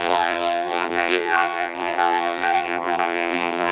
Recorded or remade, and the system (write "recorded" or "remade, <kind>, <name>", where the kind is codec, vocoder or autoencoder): remade, vocoder, BigVGAN v2